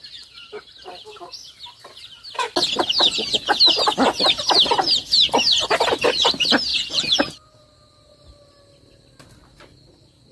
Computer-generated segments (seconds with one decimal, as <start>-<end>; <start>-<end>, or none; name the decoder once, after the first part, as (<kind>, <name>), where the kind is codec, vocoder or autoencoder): 2.9-3.6 (vocoder, Vocos); 6.7-7.6